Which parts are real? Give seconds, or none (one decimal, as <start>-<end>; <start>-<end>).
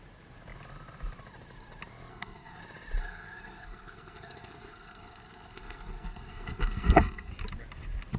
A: 0.0-2.1; 2.6-3.0; 7.3-8.2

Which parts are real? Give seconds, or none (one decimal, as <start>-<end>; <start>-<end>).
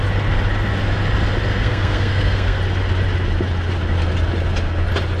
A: 0.0-1.5; 2.6-5.2